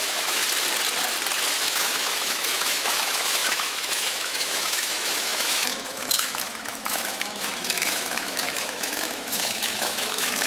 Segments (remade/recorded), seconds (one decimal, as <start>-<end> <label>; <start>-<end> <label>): 0.0-0.4 remade; 0.4-1.6 recorded; 1.6-10.5 remade